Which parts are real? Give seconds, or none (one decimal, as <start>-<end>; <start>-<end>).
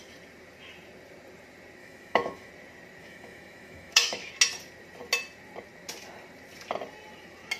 0.0-1.8; 2.5-3.0; 4.3-7.6